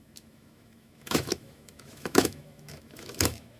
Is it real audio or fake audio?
fake